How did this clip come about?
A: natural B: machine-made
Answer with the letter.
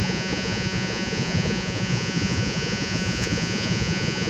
B